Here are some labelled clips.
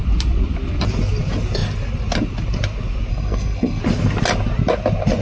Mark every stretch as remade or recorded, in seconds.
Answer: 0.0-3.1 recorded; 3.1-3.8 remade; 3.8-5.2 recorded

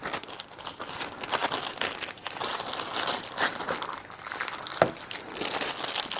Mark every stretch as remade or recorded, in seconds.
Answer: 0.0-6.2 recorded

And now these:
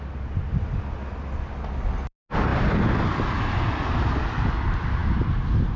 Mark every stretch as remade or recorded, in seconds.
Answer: 0.0-5.8 recorded